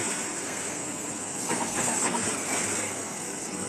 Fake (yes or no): yes